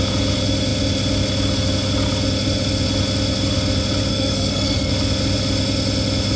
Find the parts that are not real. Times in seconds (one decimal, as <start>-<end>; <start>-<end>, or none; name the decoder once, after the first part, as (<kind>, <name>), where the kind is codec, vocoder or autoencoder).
4.1-4.9 (codec, SNAC)